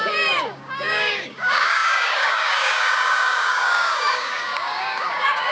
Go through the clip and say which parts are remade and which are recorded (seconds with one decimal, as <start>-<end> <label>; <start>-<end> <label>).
0.0-5.5 remade